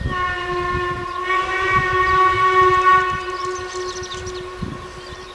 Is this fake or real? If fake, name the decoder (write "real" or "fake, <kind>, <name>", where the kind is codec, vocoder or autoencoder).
real